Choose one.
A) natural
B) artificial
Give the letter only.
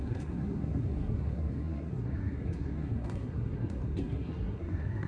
B